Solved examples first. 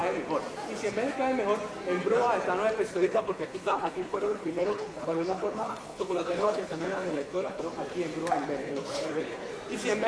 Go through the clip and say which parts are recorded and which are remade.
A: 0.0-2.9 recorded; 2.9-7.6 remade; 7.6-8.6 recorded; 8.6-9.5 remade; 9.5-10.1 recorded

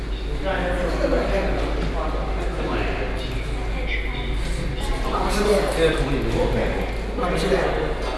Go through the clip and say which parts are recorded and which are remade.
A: 0.0-8.2 recorded